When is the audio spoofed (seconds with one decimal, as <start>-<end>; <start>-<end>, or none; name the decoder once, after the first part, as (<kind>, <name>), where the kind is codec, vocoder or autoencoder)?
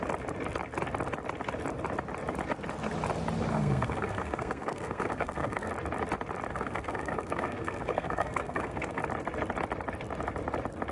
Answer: 3.5-5.7 (codec, SNAC); 6.5-9.0